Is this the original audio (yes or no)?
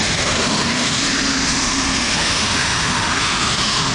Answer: no